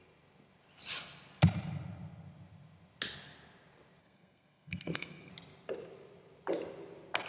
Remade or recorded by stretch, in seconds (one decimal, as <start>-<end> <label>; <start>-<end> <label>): 0.0-4.0 recorded; 4.0-5.3 remade; 5.3-7.3 recorded